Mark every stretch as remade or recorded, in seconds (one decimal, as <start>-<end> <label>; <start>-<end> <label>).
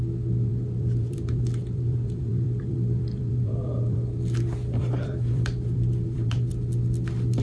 0.0-0.5 recorded; 0.5-4.1 remade; 4.1-4.8 recorded; 4.8-6.5 remade; 6.5-7.4 recorded